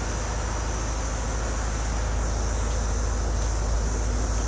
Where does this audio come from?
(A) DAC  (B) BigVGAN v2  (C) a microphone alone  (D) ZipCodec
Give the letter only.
C